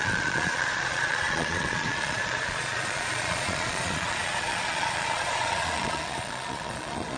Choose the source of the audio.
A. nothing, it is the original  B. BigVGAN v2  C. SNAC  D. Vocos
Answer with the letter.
D